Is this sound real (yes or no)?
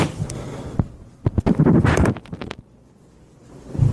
no